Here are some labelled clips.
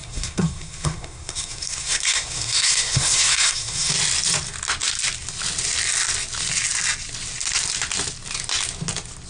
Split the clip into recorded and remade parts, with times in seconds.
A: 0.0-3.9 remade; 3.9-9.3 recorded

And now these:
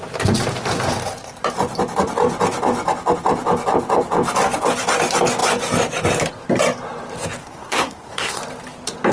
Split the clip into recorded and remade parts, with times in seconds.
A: 0.0-7.4 recorded; 7.4-8.4 remade; 8.4-9.1 recorded

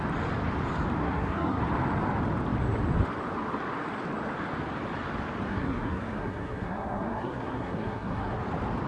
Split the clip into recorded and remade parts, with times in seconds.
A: 0.0-1.0 recorded; 1.0-1.6 remade; 1.6-5.5 recorded; 5.5-8.4 remade; 8.4-8.9 recorded

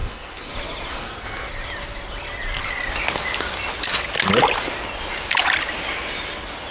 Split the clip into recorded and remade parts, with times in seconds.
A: 0.0-0.5 remade; 0.5-0.9 recorded; 0.9-1.5 remade; 1.5-6.7 recorded

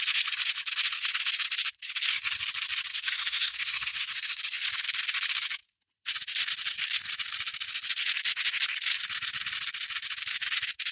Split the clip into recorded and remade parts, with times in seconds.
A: 0.0-2.9 recorded; 2.9-4.4 remade; 4.4-10.9 recorded

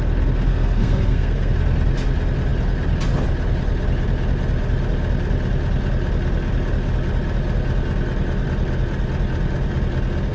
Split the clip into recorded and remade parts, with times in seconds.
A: 0.0-0.5 recorded; 0.5-1.5 remade; 1.5-10.3 recorded

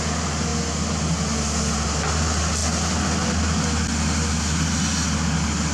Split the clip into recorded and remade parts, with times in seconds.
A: 0.0-5.7 recorded

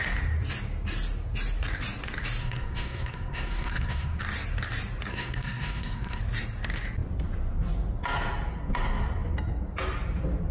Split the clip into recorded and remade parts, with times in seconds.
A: 0.0-2.4 recorded; 2.4-4.2 remade; 4.2-5.1 recorded; 5.1-6.2 remade; 6.2-10.5 recorded